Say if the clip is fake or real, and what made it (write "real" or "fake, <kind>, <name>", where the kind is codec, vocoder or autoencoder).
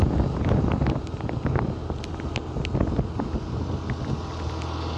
real